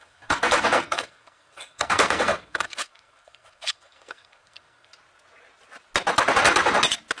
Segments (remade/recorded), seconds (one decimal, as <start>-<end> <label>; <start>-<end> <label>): 0.0-4.9 remade; 4.9-7.2 recorded